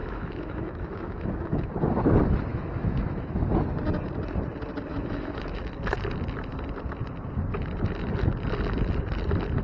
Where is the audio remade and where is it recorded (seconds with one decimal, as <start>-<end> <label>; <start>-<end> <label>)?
0.0-1.7 remade; 1.7-2.5 recorded; 2.5-3.5 remade; 3.5-4.9 recorded; 4.9-5.7 remade; 5.7-9.6 recorded